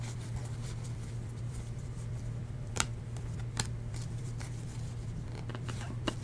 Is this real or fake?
fake